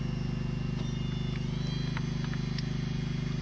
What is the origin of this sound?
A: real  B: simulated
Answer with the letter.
A